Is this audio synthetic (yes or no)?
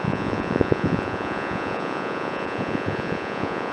yes